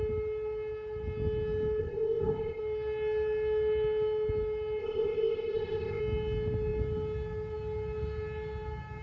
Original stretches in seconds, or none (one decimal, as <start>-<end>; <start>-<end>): 0.0-1.8; 2.6-4.8; 6.0-9.0

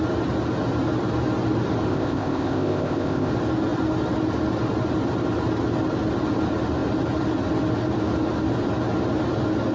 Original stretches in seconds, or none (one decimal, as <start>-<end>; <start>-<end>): 0.0-1.9; 3.3-9.7

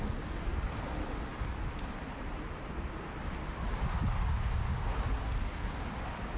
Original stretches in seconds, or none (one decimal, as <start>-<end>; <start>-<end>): 0.0-6.4

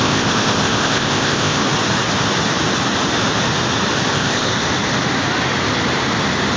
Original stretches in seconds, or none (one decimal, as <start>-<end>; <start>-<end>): 1.6-4.1; 4.5-6.6

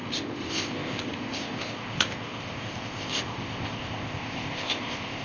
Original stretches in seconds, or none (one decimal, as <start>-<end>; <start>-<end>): none